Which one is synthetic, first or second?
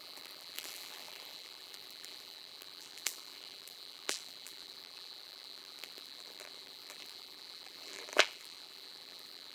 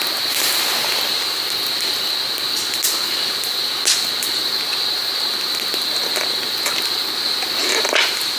first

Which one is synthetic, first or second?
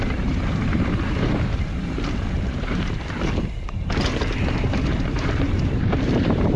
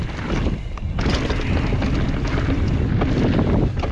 first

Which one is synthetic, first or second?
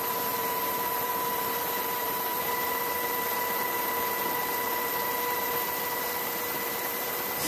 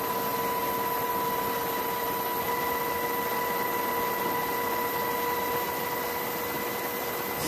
first